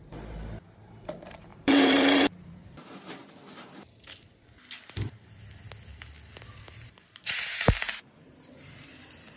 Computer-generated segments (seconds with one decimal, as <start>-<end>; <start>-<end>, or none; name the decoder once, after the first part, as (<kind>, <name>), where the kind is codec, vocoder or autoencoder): 0.0-3.2 (vocoder, BigVGAN v2); 6.6-9.4